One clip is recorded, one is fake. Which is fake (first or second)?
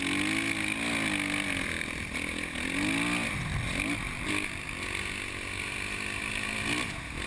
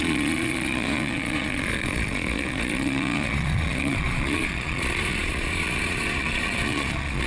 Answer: second